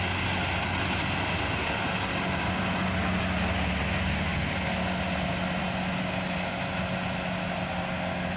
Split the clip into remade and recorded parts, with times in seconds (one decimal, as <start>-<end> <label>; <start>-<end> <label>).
0.0-8.4 recorded